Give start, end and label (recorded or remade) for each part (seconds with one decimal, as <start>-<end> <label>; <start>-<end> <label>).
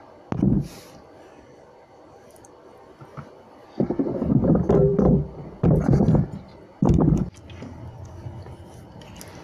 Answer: 0.0-9.4 recorded